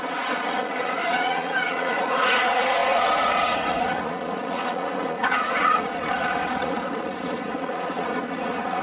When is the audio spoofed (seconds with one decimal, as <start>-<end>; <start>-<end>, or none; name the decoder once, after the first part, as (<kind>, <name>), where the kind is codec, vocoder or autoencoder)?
0.0-8.8 (vocoder, Vocos)